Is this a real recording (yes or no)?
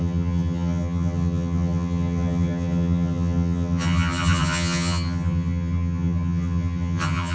no